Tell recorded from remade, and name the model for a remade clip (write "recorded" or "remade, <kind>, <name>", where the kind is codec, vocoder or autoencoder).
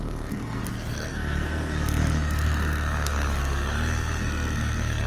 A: remade, codec, SNAC